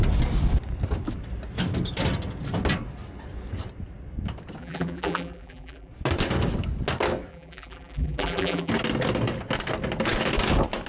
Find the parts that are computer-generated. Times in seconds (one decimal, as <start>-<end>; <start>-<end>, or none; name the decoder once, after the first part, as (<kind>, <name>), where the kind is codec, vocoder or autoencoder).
4.6-5.9 (vocoder, BigVGAN v2); 7.3-8.7